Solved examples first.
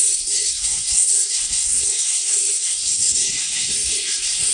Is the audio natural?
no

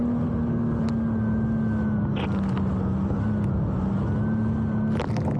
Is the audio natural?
yes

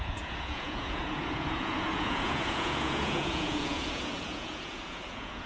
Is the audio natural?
no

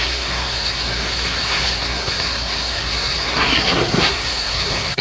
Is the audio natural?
no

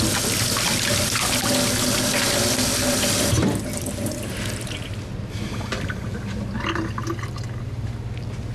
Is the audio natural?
yes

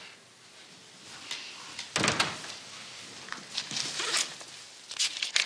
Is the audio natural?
yes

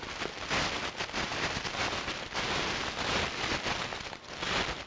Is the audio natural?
yes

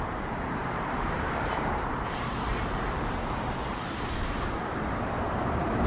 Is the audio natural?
no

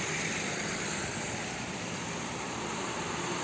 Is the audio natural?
no